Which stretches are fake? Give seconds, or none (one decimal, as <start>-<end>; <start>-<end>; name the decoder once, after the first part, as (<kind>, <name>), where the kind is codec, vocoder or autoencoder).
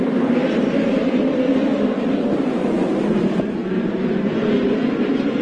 0.0-3.6 (vocoder, BigVGAN v2); 4.8-5.4